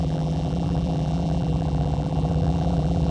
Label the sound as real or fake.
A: fake